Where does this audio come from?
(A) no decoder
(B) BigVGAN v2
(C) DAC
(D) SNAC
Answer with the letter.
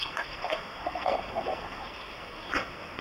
D